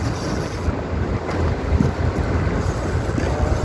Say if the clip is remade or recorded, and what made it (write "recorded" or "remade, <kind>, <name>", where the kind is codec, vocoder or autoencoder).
recorded